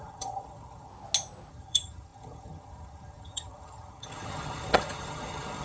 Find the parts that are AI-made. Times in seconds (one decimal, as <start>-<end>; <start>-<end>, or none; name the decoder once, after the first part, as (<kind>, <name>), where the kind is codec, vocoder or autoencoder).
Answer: 0.0-0.9 (vocoder, HiFi-GAN); 1.5-5.6